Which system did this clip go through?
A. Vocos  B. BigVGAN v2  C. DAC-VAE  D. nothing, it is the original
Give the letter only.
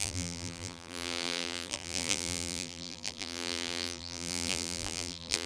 B